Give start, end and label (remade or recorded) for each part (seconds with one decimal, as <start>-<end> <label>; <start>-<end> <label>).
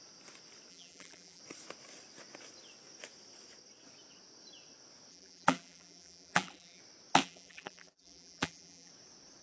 0.0-0.7 recorded; 0.7-1.4 remade; 1.4-5.1 recorded; 5.1-6.8 remade; 6.8-7.2 recorded; 7.2-8.9 remade; 8.9-9.4 recorded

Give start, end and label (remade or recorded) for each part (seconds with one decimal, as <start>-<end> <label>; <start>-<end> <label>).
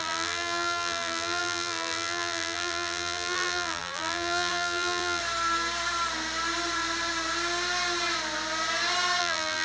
0.0-5.2 remade; 5.2-9.2 recorded; 9.2-9.6 remade